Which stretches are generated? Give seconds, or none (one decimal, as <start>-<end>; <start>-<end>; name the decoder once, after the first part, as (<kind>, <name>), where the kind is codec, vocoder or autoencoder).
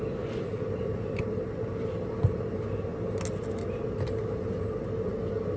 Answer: none